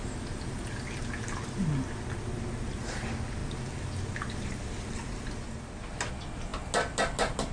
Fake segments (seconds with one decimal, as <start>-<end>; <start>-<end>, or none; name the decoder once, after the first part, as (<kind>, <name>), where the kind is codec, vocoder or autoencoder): none